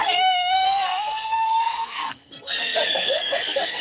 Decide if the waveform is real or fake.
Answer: fake